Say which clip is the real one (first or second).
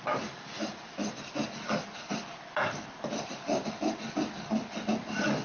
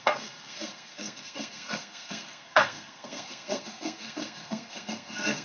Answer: first